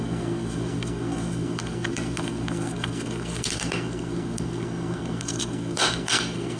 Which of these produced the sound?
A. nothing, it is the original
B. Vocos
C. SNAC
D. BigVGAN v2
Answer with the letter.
C